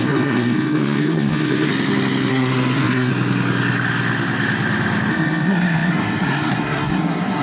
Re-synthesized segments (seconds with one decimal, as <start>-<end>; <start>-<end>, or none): 0.0-1.7; 2.3-3.1; 5.1-7.4